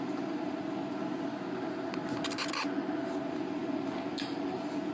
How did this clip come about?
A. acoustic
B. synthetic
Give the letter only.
A